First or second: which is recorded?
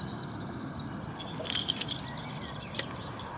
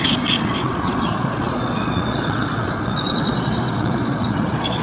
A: first